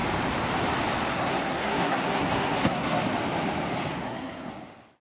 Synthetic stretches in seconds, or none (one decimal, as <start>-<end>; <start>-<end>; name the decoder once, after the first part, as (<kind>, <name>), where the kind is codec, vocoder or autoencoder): 1.1-3.0 (codec, SNAC); 3.9-4.5

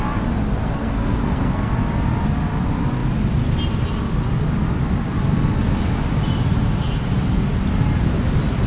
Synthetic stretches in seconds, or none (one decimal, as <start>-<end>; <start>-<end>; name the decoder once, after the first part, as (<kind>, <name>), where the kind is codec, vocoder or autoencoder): 0.6-1.7 (codec, SNAC)